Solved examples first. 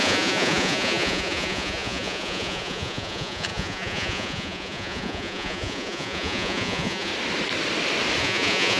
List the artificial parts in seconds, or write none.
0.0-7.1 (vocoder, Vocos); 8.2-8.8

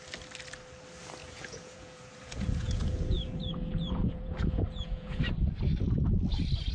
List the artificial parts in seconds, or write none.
1.2-5.2 (vocoder, Vocos)

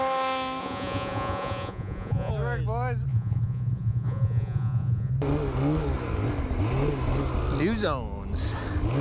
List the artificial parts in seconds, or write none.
0.6-2.3 (vocoder, Vocos); 3.1-5.1

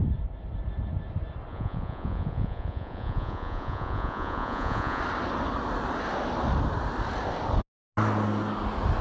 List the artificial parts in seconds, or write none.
1.5-5.0 (vocoder, Vocos)